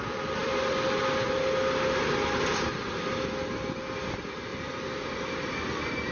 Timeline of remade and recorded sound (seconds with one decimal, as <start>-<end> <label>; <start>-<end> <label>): 0.0-6.1 recorded